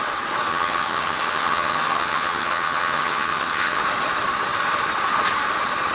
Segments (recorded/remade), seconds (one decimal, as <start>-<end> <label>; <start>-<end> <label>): 0.0-0.5 recorded; 0.5-3.8 remade; 3.8-5.9 recorded